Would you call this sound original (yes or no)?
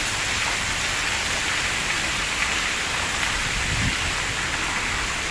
yes